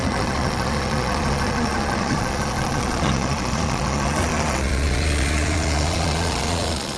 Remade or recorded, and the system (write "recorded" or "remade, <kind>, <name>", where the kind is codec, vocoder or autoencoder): remade, vocoder, Vocos